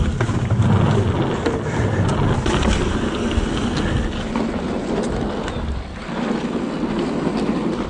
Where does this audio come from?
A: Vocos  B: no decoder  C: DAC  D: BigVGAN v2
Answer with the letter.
B